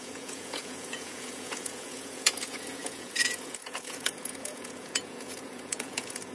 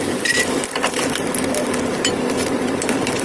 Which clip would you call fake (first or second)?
first